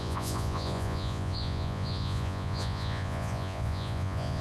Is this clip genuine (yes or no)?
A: no